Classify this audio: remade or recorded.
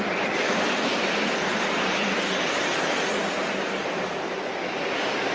recorded